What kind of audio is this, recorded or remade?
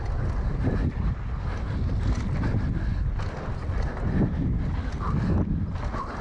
recorded